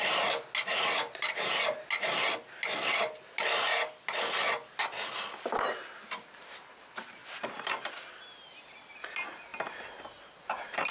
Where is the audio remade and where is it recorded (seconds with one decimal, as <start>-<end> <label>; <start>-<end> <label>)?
0.0-10.9 recorded